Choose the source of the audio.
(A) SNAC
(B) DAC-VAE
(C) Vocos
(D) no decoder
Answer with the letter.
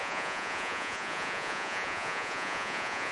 C